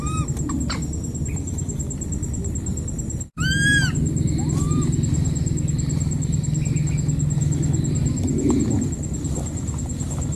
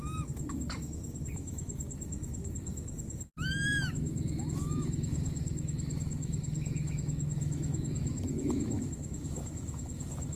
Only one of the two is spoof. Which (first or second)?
second